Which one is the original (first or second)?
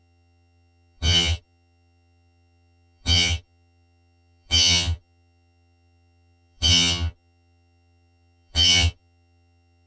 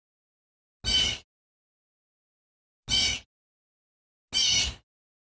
second